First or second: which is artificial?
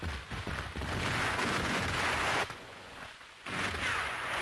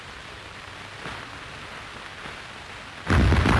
first